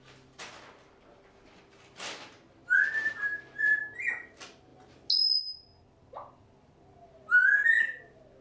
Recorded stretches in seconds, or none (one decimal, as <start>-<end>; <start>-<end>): 0.0-8.4